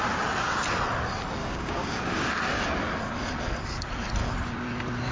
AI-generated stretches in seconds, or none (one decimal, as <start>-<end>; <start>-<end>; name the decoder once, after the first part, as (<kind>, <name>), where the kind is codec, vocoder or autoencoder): 1.4-2.3 (codec, DAC)